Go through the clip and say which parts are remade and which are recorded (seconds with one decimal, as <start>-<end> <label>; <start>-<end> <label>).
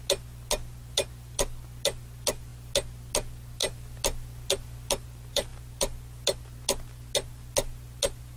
0.0-8.4 recorded